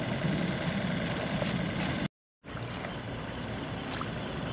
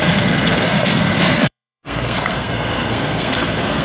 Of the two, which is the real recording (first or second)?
first